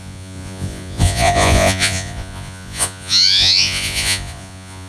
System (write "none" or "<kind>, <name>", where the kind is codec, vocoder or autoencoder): vocoder, Vocos